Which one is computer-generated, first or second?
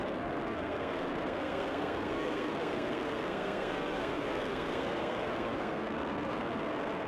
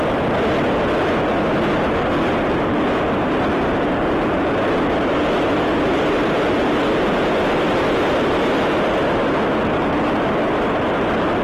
first